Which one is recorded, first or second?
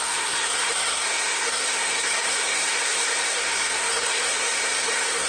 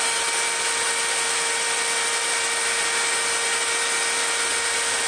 second